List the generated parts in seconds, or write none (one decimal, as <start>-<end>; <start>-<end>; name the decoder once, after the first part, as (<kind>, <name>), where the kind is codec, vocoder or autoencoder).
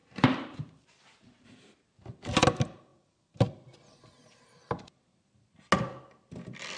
0.0-1.8 (vocoder, BigVGAN v2)